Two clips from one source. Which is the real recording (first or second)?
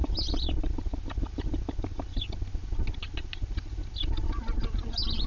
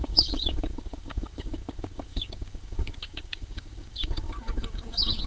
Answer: first